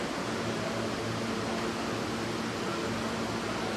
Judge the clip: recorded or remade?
recorded